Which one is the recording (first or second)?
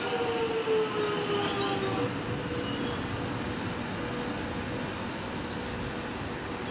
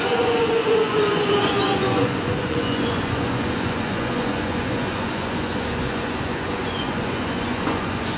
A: first